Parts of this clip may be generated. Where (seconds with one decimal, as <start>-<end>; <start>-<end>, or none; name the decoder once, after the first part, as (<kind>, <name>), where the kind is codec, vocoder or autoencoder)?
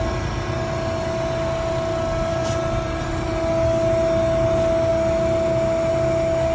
2.3-3.5 (vocoder, BigVGAN v2)